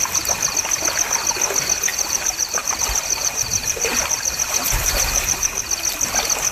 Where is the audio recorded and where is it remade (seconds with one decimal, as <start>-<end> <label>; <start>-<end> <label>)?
0.0-1.9 recorded; 1.9-5.6 remade; 5.6-6.5 recorded